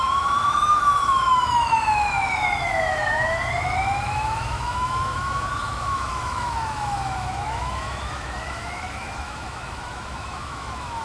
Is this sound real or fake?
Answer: fake